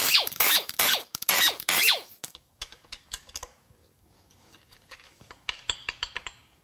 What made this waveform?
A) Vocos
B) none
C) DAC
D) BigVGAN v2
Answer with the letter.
C